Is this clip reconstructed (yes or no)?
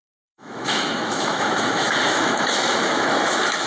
yes